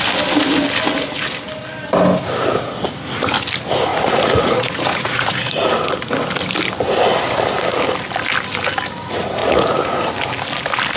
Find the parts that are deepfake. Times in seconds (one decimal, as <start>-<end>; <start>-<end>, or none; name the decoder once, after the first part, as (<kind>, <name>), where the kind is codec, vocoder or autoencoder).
3.9-5.7 (vocoder, Vocos); 9.4-10.1